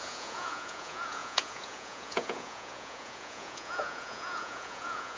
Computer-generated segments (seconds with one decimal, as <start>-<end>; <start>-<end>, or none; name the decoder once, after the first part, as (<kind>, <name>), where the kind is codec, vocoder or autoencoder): 0.0-5.2 (vocoder, Vocos)